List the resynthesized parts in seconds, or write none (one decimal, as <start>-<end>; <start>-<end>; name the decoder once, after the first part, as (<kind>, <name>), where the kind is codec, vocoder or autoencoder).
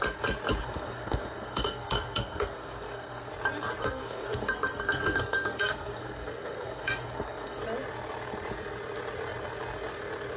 0.6-3.3 (codec, SNAC); 3.8-7.6